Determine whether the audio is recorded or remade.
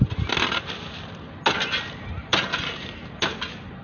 recorded